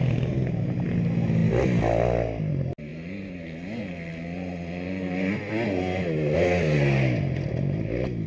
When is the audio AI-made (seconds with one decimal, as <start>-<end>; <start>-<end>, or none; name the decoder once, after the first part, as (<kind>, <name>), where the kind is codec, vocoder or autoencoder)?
none